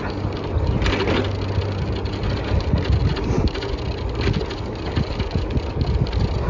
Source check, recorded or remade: recorded